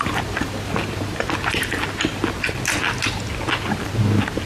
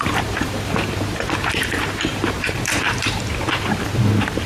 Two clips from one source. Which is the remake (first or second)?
second